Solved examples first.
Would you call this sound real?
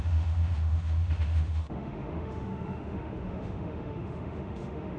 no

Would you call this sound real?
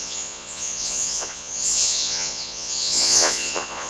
no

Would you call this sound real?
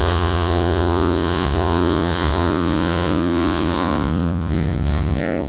no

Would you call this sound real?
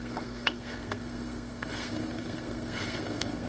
no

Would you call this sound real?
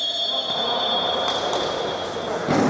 yes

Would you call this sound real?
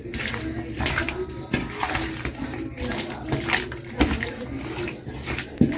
yes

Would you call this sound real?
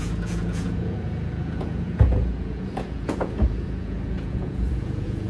no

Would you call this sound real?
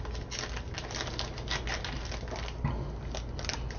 yes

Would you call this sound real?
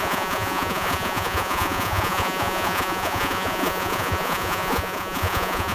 no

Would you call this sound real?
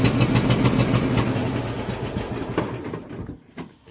yes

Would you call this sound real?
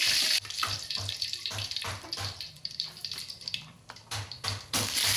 no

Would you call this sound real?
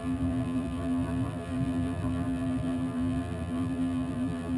no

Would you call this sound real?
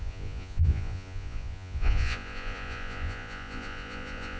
no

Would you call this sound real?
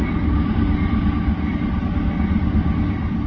yes